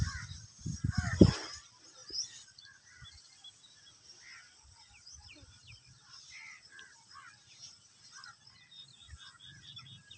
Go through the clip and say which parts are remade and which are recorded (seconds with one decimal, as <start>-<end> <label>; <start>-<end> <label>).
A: 0.0-10.2 recorded

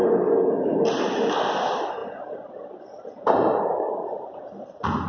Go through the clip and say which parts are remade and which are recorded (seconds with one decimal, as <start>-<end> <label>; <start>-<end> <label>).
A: 0.0-5.1 recorded